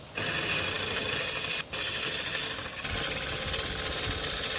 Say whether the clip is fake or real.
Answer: real